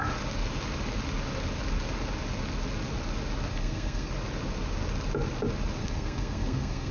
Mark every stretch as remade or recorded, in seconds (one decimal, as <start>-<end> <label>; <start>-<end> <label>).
0.0-3.5 recorded; 3.5-4.1 remade; 4.1-5.8 recorded; 5.8-6.9 remade